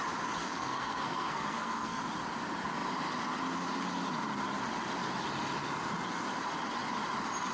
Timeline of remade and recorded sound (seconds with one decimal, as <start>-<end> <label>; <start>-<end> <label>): 0.0-0.4 recorded; 0.4-2.0 remade; 2.0-7.5 recorded